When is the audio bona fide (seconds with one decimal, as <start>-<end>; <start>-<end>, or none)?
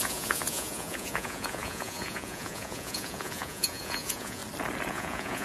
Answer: 4.4-4.9